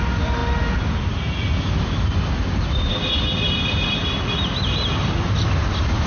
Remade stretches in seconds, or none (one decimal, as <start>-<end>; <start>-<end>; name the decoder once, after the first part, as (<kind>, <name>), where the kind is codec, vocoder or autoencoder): 5.0-6.1 (vocoder, BigVGAN v2)

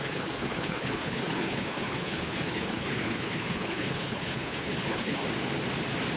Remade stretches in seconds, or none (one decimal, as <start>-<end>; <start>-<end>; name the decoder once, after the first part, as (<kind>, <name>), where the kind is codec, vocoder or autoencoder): 0.0-5.2 (codec, HILCodec)

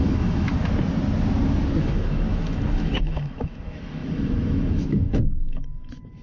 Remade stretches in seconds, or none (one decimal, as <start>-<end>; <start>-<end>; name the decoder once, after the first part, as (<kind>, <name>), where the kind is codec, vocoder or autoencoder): 0.0-0.5 (autoencoder, DAC-VAE); 1.8-6.2